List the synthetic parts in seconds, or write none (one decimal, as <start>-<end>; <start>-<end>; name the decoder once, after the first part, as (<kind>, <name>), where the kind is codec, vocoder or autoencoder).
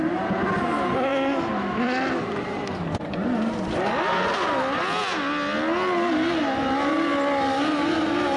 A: none